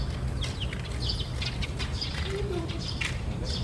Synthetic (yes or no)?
no